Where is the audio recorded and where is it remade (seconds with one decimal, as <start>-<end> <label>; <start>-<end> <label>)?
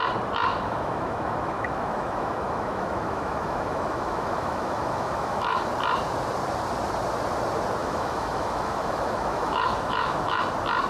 0.0-0.5 recorded; 0.5-5.7 remade; 5.7-7.8 recorded; 7.8-10.4 remade; 10.4-10.9 recorded